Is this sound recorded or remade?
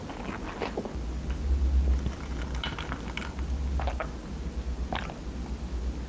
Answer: recorded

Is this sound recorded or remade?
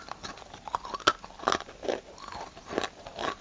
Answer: recorded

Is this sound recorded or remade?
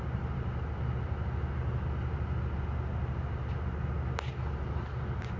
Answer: recorded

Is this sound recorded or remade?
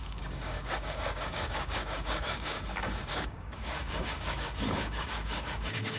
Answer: remade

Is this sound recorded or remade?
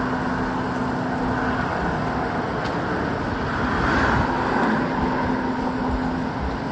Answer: recorded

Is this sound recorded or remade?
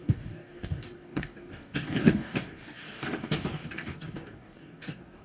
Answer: remade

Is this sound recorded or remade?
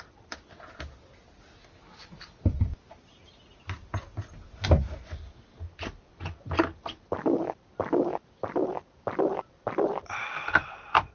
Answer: recorded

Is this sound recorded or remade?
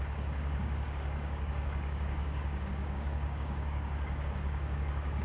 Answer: remade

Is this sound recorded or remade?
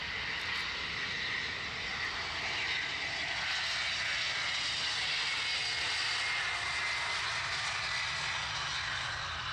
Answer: recorded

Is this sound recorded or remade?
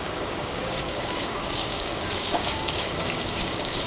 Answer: remade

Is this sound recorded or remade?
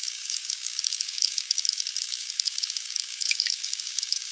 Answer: remade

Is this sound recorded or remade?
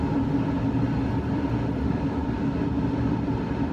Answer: recorded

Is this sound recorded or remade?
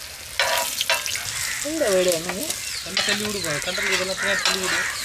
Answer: recorded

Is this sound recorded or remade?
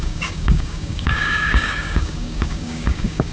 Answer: remade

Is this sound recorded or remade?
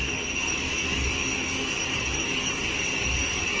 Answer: remade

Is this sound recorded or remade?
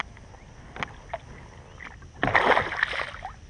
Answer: recorded